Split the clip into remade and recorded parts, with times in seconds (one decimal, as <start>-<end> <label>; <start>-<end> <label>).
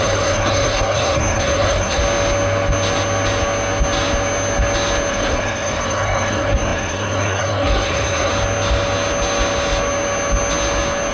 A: 0.0-2.0 remade; 2.0-5.1 recorded; 5.1-8.3 remade; 8.3-11.1 recorded